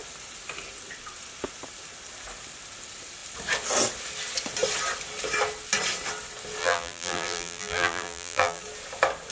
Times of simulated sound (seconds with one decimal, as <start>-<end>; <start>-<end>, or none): 6.6-8.6